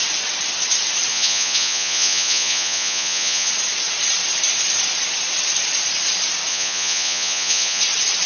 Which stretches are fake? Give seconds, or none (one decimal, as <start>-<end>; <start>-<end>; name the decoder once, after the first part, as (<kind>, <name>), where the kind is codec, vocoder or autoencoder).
1.1-3.5 (vocoder, Vocos); 6.5-7.8